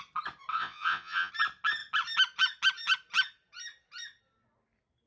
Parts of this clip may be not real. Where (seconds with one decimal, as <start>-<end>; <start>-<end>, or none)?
0.5-1.3